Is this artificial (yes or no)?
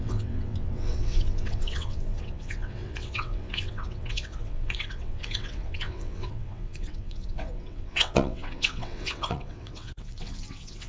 yes